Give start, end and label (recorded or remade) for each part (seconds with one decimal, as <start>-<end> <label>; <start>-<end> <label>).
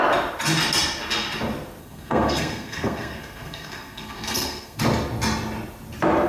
0.0-1.8 recorded; 1.8-4.8 remade; 4.8-6.3 recorded